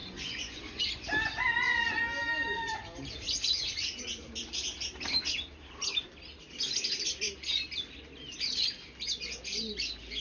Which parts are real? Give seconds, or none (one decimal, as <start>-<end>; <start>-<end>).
0.8-10.2